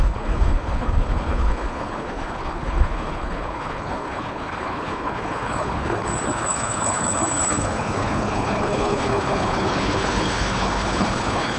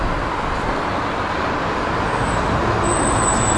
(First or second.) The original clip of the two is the second